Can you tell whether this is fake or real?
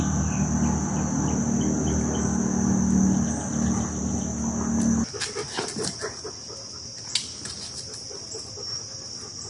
real